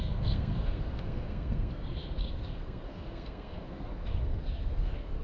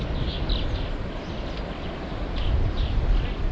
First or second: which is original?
second